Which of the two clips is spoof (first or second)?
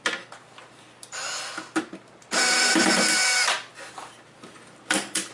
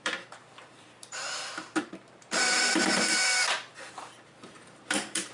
second